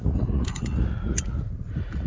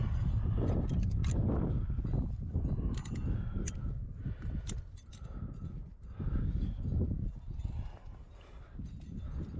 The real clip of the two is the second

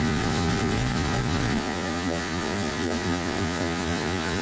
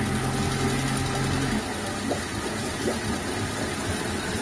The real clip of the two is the second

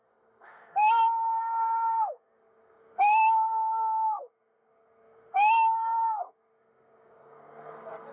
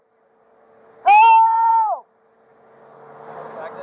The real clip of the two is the second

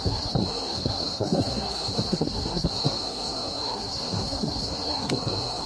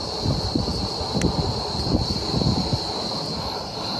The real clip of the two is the second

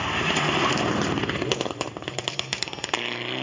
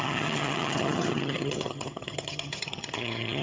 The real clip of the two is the first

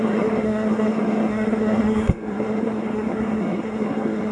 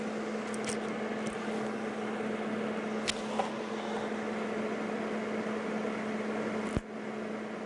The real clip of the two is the second